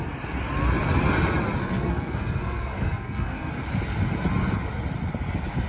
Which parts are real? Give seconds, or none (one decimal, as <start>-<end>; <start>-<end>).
0.0-1.6; 3.5-5.7